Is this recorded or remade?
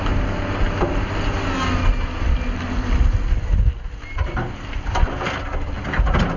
recorded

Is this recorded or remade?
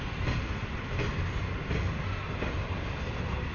recorded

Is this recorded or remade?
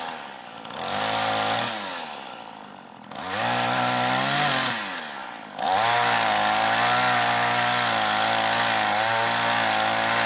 recorded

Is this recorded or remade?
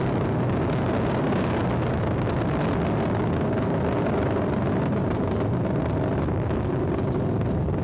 recorded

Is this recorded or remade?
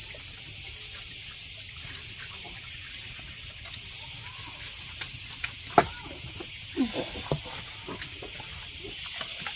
recorded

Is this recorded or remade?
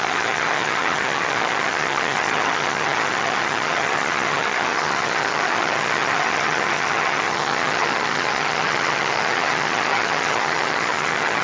remade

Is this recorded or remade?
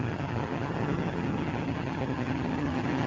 remade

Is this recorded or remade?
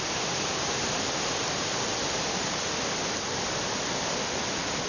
recorded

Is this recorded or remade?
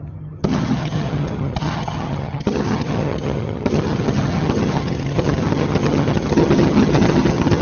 remade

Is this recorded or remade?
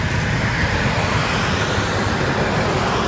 recorded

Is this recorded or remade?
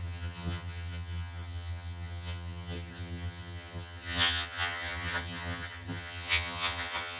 remade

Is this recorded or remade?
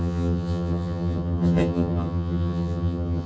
remade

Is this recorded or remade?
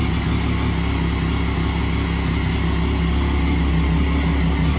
recorded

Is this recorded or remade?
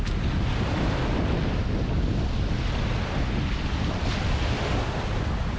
recorded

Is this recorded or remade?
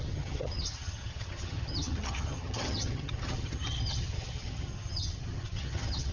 remade